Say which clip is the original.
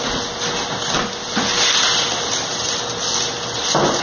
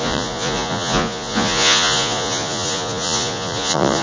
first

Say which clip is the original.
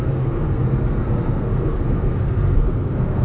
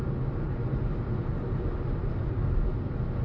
second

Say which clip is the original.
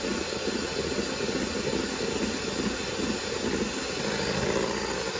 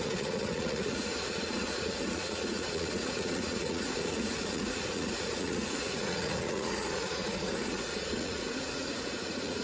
first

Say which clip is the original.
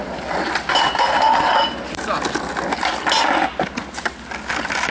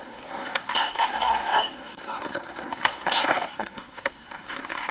first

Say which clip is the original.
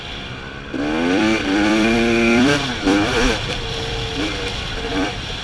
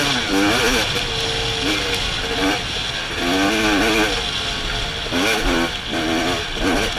second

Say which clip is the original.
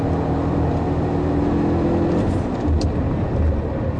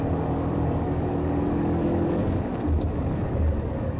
first